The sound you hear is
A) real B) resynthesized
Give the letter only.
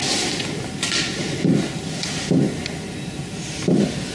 A